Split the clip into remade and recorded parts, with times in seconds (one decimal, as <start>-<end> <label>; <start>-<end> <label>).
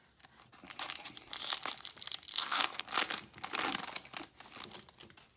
0.0-2.3 recorded; 2.3-2.8 remade; 2.8-5.4 recorded